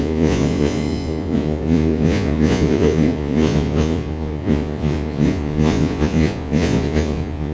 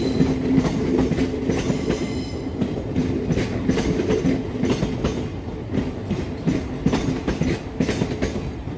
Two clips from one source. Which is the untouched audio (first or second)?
second